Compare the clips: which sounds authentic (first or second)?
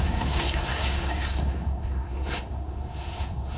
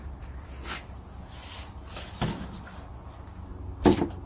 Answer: second